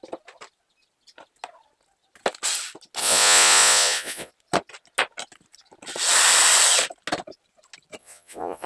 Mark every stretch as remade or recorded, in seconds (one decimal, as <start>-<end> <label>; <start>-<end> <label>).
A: 0.0-3.0 recorded; 3.0-4.3 remade; 4.3-8.0 recorded; 8.0-8.7 remade